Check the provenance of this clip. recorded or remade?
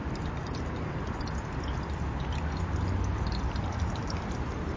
remade